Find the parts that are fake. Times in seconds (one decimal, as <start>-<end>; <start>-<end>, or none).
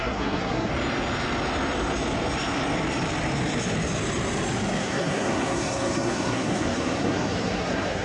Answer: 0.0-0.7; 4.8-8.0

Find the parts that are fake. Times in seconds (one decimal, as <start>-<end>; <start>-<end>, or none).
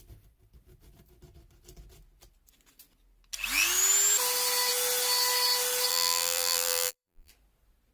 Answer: 5.9-7.3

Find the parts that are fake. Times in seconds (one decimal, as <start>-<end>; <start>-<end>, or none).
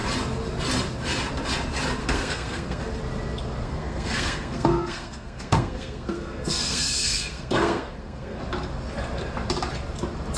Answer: 2.0-2.8; 3.6-8.4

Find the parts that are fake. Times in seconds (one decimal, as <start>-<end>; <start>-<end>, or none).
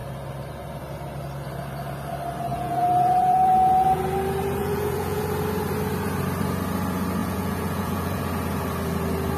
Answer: 2.5-4.0; 4.6-5.2; 7.2-8.2